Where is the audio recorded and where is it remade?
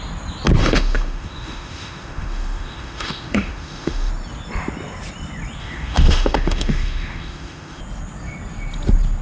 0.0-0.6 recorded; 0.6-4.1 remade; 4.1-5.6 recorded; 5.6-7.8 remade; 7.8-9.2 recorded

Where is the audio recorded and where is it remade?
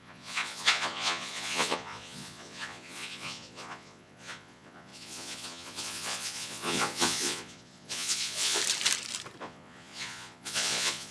0.0-8.6 remade; 8.6-9.4 recorded; 9.4-11.1 remade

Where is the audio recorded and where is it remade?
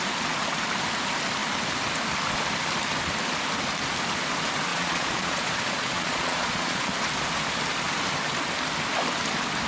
0.0-4.7 recorded; 4.7-6.9 remade; 6.9-9.7 recorded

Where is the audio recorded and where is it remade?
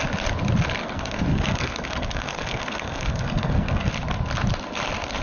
0.0-0.8 recorded; 0.8-3.9 remade; 3.9-5.2 recorded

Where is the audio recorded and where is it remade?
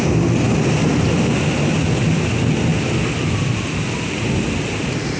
0.0-5.2 recorded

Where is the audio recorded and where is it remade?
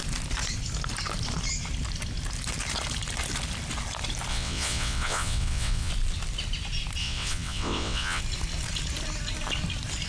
0.0-4.3 recorded; 4.3-5.9 remade; 5.9-7.0 recorded; 7.0-8.2 remade; 8.2-10.1 recorded